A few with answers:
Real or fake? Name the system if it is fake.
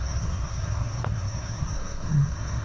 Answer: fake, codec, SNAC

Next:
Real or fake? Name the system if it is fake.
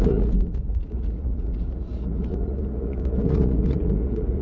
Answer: fake, vocoder, Vocos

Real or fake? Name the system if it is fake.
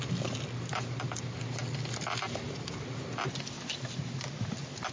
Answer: real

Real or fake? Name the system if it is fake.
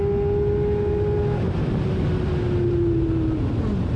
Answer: real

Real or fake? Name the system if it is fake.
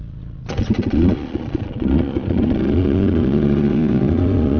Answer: fake, vocoder, Vocos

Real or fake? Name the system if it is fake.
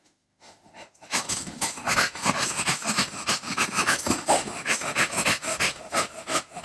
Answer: fake, autoencoder, DAC-VAE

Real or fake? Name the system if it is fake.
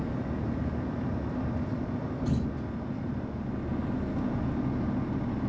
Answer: real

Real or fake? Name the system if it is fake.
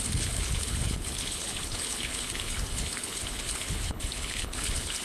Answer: fake, codec, HILCodec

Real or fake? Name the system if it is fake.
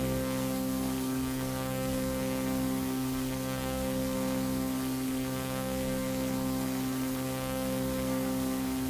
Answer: fake, codec, SNAC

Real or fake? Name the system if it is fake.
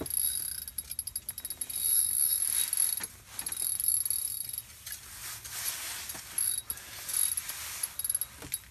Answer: real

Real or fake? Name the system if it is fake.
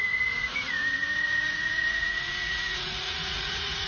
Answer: fake, vocoder, Vocos